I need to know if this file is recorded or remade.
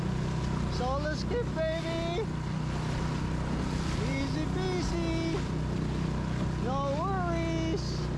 recorded